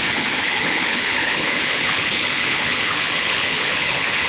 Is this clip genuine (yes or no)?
no